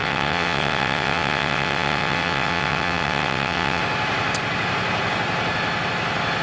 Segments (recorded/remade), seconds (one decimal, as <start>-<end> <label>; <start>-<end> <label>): 0.0-3.8 remade; 3.8-6.4 recorded